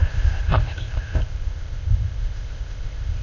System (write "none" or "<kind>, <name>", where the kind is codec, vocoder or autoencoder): codec, ZipCodec